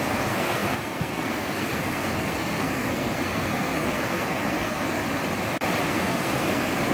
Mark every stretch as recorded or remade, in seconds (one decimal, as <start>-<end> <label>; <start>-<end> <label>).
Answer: 0.0-5.0 remade; 5.0-5.8 recorded; 5.8-6.9 remade